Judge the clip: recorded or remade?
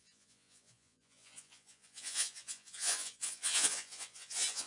remade